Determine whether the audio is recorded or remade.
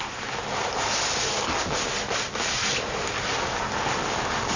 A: recorded